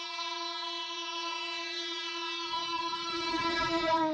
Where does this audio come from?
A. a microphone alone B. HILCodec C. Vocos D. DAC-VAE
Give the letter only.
C